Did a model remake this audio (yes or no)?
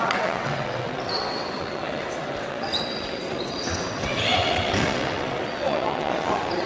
yes